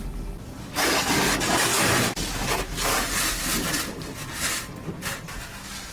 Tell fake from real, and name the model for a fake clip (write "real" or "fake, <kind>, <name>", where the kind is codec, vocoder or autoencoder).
real